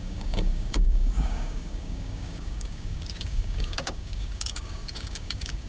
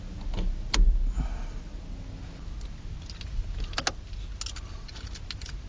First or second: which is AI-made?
first